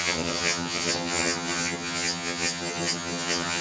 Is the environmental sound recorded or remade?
remade